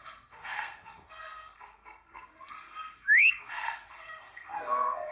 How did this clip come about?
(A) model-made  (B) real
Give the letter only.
A